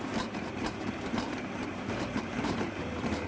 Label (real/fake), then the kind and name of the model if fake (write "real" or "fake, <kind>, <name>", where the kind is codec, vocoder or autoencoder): fake, vocoder, BigVGAN v2